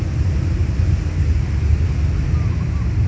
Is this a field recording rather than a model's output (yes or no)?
yes